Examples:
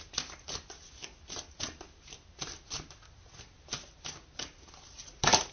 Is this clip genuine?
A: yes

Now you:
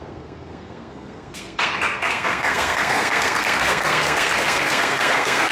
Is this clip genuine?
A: no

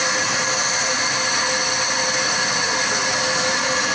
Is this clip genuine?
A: yes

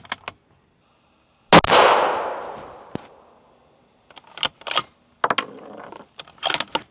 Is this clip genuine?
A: yes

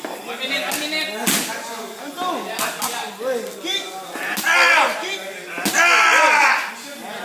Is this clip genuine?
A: yes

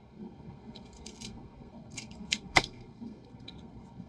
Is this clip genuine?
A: no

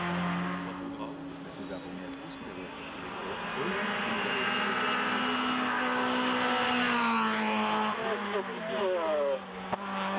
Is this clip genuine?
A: yes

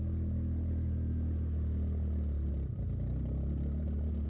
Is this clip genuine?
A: yes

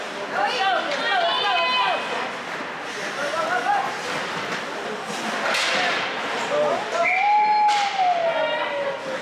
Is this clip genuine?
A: yes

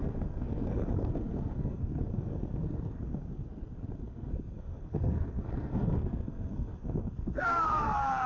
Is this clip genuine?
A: no